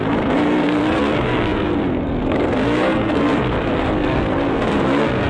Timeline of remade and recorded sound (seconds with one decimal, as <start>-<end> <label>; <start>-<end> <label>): 0.0-5.3 remade